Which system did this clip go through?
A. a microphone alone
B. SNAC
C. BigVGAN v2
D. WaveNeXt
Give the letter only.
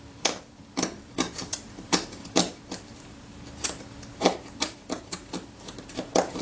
C